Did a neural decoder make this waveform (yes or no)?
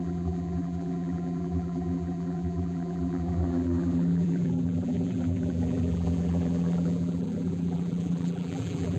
yes